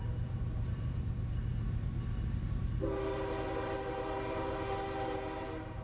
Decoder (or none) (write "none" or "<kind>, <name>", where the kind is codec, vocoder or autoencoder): vocoder, BigVGAN v2